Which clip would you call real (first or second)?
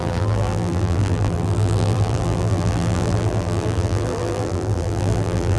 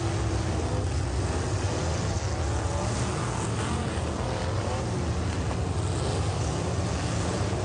second